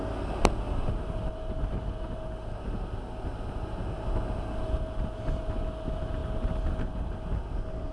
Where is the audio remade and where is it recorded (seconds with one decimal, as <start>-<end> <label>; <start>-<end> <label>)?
0.0-7.9 recorded